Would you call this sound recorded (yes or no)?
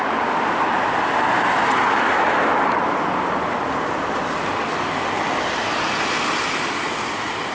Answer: yes